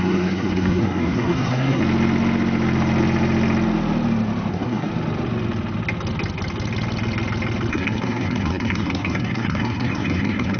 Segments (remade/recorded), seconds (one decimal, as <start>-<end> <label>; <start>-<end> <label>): 0.0-1.8 remade; 1.8-4.5 recorded; 4.5-4.9 remade; 4.9-7.7 recorded; 7.7-10.6 remade